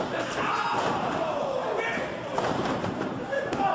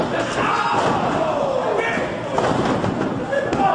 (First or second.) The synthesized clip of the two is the first